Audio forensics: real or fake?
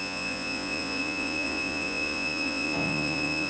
fake